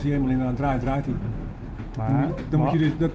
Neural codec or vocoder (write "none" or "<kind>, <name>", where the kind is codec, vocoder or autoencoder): none